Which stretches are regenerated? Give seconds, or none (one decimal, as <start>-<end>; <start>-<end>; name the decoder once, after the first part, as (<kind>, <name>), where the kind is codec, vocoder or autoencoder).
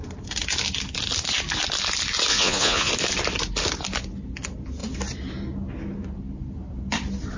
2.3-2.9 (vocoder, Vocos)